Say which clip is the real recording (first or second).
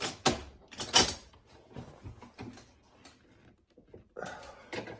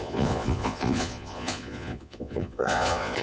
first